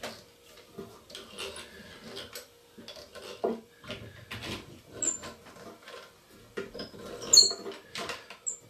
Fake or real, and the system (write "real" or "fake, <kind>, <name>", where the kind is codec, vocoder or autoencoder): real